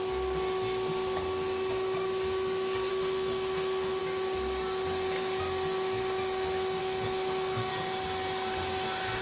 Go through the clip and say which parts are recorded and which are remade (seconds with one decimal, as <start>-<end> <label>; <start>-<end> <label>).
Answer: 0.0-2.9 recorded; 2.9-4.0 remade; 4.0-6.8 recorded; 6.8-7.7 remade; 7.7-9.2 recorded